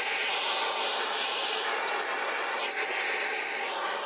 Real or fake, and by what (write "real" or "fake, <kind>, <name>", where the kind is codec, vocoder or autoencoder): real